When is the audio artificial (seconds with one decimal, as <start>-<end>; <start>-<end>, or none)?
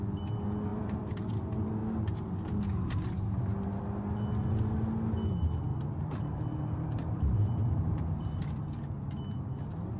0.7-1.2; 5.7-8.5